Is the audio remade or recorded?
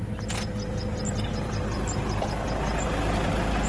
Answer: recorded